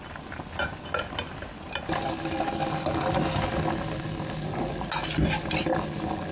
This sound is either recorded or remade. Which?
recorded